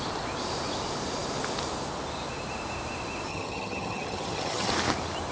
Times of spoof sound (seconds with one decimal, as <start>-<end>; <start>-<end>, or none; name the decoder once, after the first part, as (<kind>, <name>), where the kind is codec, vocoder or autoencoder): 3.3-4.7 (vocoder, HiFi-GAN)